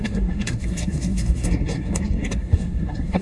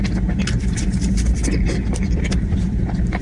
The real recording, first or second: second